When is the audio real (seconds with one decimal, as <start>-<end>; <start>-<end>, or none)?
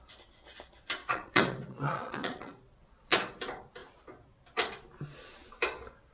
0.0-1.0; 3.2-6.1